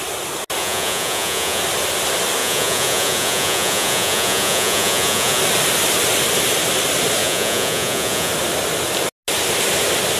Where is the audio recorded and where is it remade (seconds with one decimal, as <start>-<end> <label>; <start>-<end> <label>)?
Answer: 0.0-0.6 recorded; 0.6-1.6 remade; 1.6-2.4 recorded; 2.4-5.4 remade; 5.4-7.2 recorded; 7.2-8.3 remade; 8.3-10.2 recorded